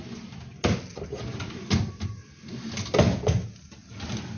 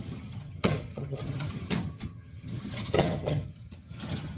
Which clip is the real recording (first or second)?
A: first